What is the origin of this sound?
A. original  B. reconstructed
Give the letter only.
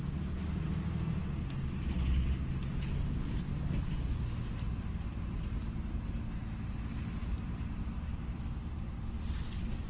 A